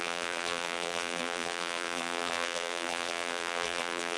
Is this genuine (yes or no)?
no